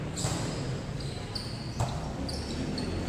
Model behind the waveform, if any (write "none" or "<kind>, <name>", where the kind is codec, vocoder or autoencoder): none